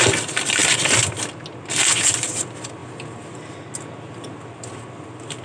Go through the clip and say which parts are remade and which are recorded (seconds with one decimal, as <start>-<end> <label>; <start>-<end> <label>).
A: 0.0-5.4 recorded